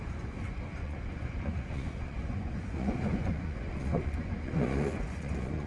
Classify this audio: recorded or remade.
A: remade